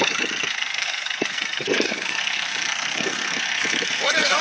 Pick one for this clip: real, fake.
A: fake